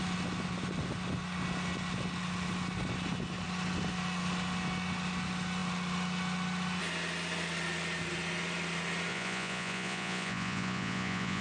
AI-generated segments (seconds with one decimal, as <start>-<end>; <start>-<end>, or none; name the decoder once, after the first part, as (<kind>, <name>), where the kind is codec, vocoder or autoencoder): 9.1-11.4 (vocoder, Vocos)

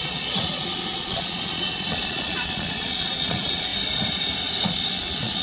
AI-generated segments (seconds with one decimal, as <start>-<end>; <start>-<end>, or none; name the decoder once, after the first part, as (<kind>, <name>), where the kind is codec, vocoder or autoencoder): 0.0-3.7 (vocoder, Vocos); 4.6-5.4